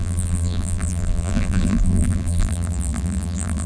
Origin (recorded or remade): remade